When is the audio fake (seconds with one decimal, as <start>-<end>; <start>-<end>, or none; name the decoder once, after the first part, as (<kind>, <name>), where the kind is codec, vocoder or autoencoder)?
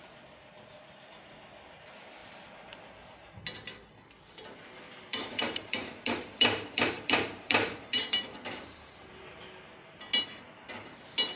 2.2-3.4 (vocoder, BigVGAN v2); 5.1-9.4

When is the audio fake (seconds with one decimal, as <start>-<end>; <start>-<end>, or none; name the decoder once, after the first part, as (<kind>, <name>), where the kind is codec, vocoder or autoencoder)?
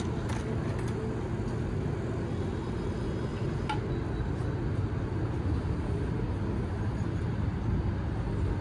none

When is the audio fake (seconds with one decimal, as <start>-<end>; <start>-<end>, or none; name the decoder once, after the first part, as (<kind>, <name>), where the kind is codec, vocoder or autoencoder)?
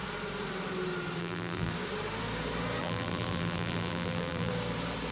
1.2-1.7 (vocoder, BigVGAN v2); 2.8-4.5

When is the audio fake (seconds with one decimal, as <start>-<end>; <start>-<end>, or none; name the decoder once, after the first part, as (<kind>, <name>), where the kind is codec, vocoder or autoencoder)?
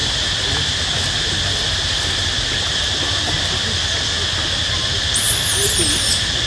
none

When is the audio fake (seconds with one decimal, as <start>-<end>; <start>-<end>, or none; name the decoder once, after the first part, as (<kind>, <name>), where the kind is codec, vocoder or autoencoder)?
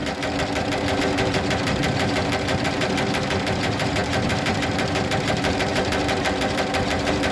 1.0-7.3 (vocoder, BigVGAN v2)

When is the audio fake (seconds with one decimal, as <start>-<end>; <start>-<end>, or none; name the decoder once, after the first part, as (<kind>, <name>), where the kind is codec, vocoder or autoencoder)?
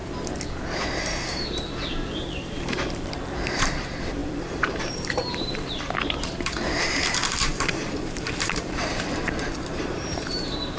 1.0-10.8 (vocoder, BigVGAN v2)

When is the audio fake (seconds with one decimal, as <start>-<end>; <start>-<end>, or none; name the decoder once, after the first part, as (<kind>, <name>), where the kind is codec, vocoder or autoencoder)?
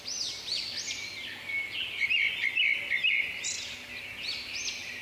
none